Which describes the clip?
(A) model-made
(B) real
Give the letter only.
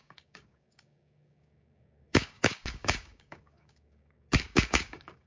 A